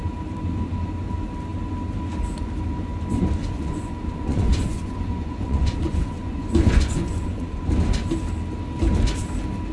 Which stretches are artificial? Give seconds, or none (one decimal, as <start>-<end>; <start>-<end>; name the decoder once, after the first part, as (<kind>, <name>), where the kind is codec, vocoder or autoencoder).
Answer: 3.4-7.7 (vocoder, Vocos)